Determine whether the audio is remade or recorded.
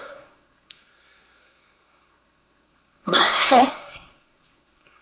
remade